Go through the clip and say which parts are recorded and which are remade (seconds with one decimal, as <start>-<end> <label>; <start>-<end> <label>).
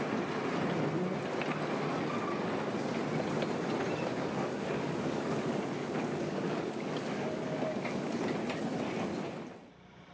0.0-4.1 recorded; 4.1-8.2 remade; 8.2-10.1 recorded